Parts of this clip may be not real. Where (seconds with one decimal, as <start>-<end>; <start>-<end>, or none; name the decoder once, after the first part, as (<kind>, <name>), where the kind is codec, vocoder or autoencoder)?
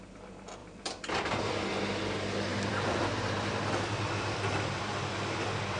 0.6-1.5 (vocoder, BigVGAN v2); 2.5-5.8